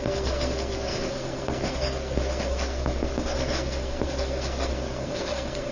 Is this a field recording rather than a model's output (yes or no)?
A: no